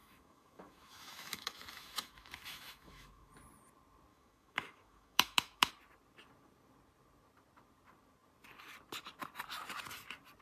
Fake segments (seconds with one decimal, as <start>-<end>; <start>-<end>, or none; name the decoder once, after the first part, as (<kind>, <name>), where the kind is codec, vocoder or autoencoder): 0.0-3.3 (autoencoder, DAC-VAE); 4.1-5.7